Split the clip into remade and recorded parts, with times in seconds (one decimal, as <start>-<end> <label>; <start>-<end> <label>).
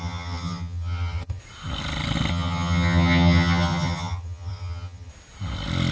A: 0.0-1.4 remade; 1.4-2.3 recorded; 2.3-5.1 remade; 5.1-5.9 recorded